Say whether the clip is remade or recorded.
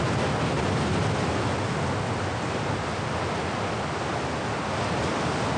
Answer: recorded